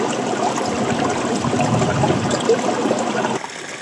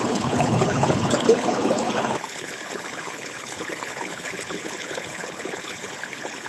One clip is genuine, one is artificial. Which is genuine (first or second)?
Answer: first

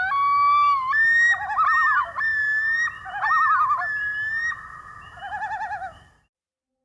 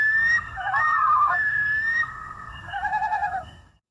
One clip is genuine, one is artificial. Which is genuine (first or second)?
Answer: first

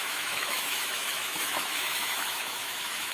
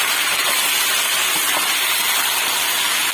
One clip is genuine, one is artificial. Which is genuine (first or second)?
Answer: second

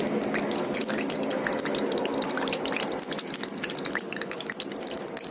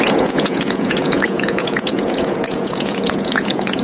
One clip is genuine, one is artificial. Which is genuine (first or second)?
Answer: first